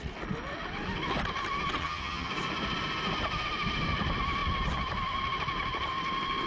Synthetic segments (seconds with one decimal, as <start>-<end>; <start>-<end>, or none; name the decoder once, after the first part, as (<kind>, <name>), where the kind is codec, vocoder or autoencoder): 1.8-2.3 (vocoder, HiFi-GAN)